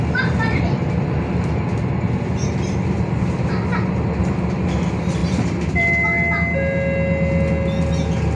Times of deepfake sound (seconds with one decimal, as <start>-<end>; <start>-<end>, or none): none